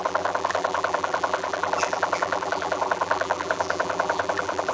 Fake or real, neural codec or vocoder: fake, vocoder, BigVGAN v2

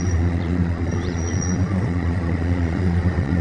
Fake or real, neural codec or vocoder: fake, vocoder, Vocos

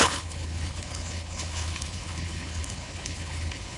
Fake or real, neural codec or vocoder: fake, codec, HILCodec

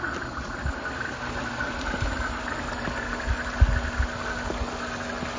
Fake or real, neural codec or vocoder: real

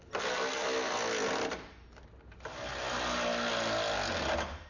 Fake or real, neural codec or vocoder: real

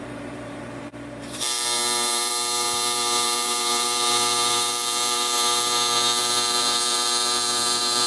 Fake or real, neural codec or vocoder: fake, vocoder, BigVGAN v2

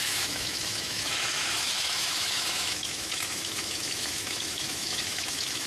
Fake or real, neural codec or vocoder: fake, autoencoder, DAC-VAE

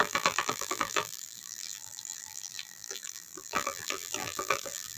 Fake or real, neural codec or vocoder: fake, vocoder, BigVGAN v2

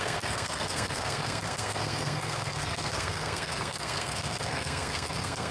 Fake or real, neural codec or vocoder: fake, codec, SNAC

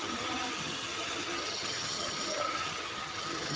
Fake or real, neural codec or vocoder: fake, vocoder, HiFi-GAN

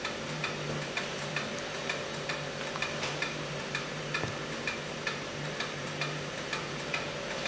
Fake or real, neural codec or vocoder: fake, vocoder, BigVGAN v2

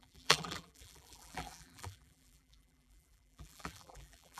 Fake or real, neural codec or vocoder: fake, vocoder, BigVGAN v2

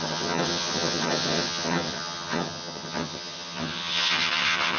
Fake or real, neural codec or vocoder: fake, vocoder, HiFi-GAN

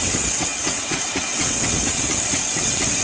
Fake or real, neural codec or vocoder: fake, vocoder, WaveNeXt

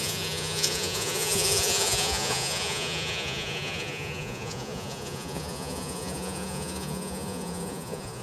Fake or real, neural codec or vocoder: fake, vocoder, Vocos